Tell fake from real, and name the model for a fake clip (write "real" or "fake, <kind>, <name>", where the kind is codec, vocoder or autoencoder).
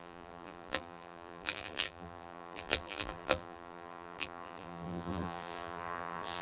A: fake, vocoder, BigVGAN v2